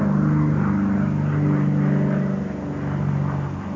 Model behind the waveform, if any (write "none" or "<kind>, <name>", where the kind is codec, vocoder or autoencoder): none